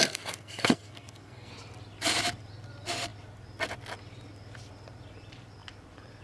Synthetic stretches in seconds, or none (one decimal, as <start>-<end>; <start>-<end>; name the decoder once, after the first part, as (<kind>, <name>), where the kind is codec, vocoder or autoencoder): 0.0-1.5 (codec, SNAC)